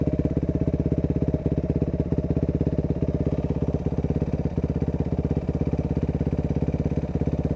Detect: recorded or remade recorded